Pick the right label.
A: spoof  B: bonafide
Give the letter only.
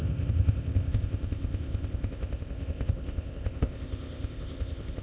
A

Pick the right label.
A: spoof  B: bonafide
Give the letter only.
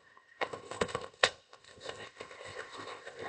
A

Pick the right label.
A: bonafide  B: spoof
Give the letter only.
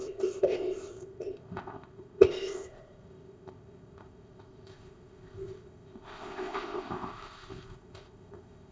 B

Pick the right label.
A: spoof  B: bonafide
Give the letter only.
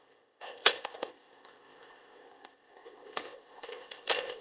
A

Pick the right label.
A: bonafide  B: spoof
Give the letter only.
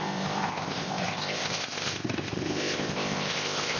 B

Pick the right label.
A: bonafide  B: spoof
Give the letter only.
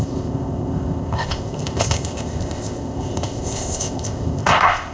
B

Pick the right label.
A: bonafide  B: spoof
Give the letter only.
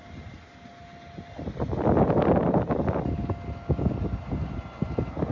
A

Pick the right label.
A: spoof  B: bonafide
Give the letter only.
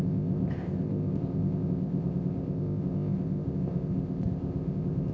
A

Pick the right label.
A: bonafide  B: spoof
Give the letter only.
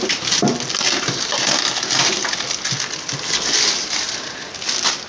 A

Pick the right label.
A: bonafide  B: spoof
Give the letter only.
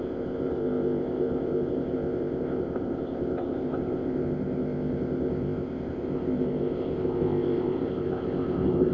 B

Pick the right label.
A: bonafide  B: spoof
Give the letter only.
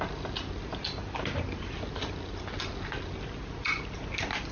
A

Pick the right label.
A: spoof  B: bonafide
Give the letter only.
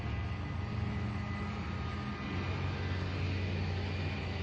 B